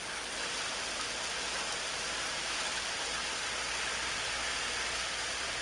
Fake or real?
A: real